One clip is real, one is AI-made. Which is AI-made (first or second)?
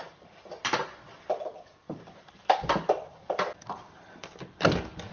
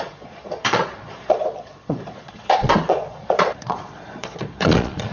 second